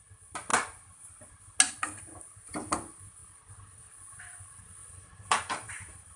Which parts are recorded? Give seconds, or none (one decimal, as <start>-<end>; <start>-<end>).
0.0-4.8

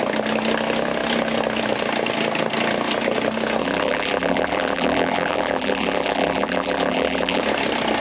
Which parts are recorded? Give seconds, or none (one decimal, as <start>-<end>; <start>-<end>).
0.0-3.6; 7.4-8.0

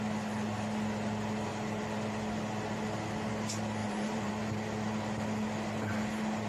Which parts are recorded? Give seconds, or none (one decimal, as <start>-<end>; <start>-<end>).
0.0-3.8; 4.3-6.5

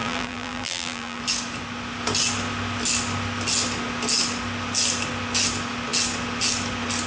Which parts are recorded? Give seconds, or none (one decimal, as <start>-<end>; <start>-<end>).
1.2-7.1

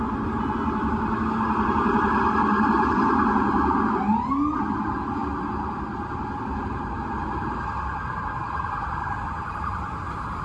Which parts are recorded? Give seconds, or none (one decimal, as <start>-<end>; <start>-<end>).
0.0-10.4

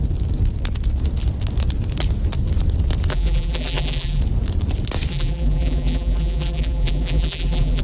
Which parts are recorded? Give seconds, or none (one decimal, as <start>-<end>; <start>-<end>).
0.0-3.1; 4.2-5.1

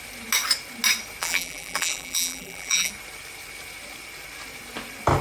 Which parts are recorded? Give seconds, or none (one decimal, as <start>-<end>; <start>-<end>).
0.0-1.2; 2.9-5.2